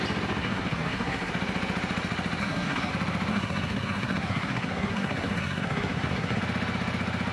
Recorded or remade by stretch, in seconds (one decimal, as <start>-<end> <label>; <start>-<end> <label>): 0.0-0.4 recorded; 0.4-1.3 remade; 1.3-2.4 recorded; 2.4-2.9 remade; 2.9-3.3 recorded; 3.3-6.4 remade; 6.4-7.3 recorded